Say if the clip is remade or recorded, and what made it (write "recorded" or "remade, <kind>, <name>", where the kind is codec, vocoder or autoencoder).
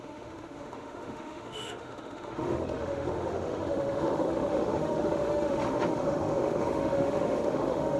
remade, autoencoder, DAC-VAE